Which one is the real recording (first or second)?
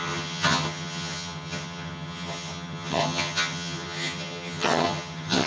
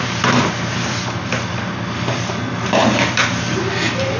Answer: second